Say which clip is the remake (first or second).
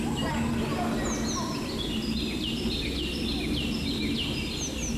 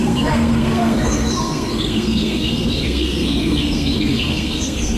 second